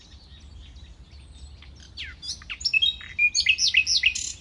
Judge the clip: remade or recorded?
recorded